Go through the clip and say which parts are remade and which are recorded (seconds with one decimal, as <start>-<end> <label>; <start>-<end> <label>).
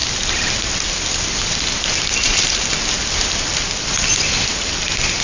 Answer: 0.0-5.2 recorded